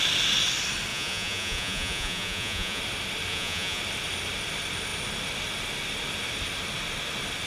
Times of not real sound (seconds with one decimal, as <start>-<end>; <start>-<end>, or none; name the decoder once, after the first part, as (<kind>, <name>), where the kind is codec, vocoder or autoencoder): 0.9-2.8 (vocoder, Vocos); 3.3-3.8